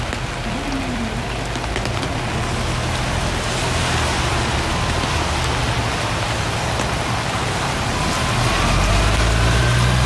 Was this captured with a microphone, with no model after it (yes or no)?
yes